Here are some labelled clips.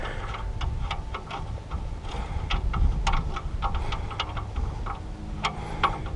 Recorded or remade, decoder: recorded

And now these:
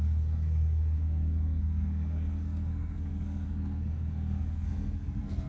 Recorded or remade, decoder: remade, codec, SNAC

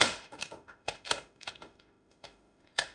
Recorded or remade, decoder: remade, autoencoder, DAC-VAE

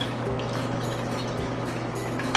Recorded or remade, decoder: remade, autoencoder, DAC-VAE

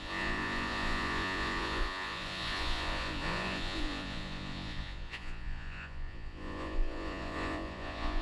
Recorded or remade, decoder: remade, vocoder, Vocos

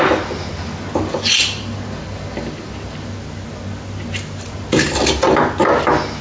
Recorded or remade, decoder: recorded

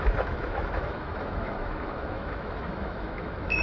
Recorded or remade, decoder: remade, autoencoder, DAC-VAE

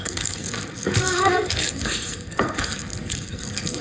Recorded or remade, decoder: remade, codec, SNAC